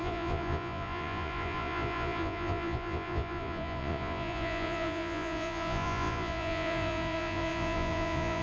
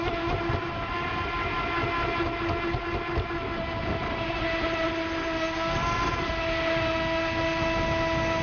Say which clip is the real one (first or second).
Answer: second